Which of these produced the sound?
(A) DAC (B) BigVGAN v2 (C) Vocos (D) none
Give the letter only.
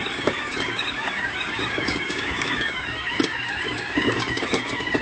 A